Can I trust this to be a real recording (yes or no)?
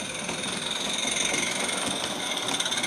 yes